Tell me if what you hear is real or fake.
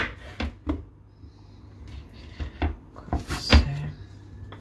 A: real